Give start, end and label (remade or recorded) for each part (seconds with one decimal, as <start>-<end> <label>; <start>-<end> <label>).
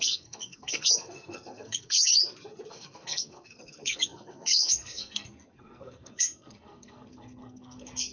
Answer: 0.0-2.1 remade; 2.1-2.7 recorded; 2.7-8.1 remade